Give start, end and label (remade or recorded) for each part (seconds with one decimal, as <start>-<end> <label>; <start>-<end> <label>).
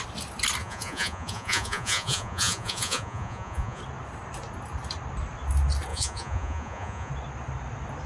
0.0-0.6 recorded; 0.6-3.8 remade; 3.8-5.9 recorded; 5.9-7.1 remade; 7.1-8.1 recorded